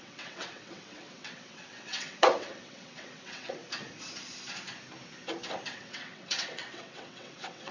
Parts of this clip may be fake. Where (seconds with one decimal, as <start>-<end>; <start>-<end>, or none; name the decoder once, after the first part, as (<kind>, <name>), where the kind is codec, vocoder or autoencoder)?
0.0-3.6 (vocoder, WaveNeXt); 5.7-7.7